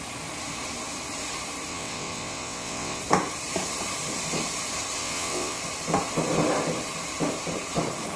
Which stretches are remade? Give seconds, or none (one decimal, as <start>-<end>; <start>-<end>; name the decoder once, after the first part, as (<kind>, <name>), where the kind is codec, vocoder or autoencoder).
1.7-3.0 (vocoder, WaveNeXt); 5.0-5.6